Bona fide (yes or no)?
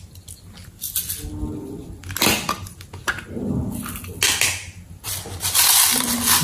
yes